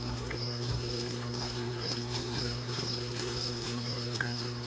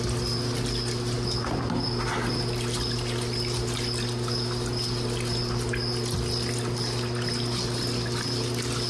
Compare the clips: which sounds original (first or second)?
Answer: second